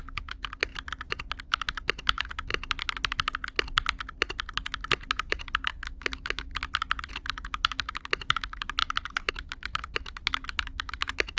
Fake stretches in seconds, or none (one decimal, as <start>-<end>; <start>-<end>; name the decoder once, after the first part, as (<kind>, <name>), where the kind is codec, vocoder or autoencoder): 0.0-0.7 (autoencoder, DAC-VAE); 1.4-2.5; 5.1-6.5; 7.1-11.4